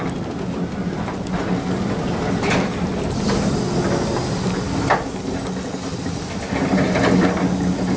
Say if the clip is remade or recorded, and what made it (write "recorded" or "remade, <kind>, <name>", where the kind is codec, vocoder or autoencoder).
recorded